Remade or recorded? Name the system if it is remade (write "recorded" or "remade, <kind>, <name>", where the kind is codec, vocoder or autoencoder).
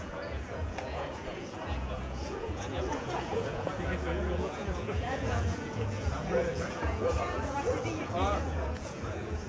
remade, vocoder, Vocos